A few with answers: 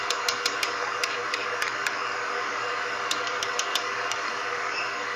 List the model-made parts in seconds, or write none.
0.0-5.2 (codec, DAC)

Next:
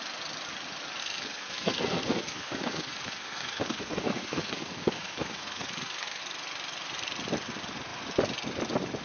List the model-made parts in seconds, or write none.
1.0-6.2 (codec, SNAC)

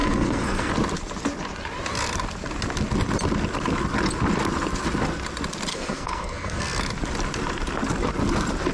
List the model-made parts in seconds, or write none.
0.0-0.7 (codec, SNAC); 5.7-6.8